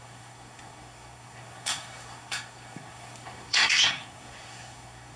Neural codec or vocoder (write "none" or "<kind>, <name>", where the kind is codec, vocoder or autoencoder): codec, SNAC